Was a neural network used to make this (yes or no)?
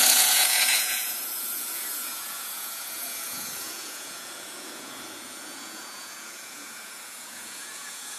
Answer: yes